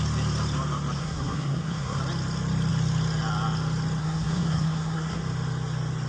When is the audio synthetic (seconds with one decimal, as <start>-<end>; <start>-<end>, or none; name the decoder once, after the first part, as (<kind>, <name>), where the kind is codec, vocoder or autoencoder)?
1.0-2.0 (codec, SNAC); 4.0-5.2